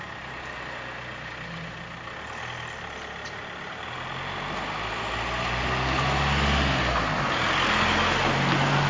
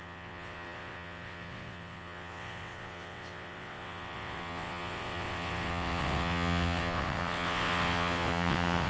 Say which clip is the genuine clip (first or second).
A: first